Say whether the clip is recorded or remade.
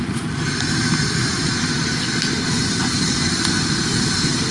remade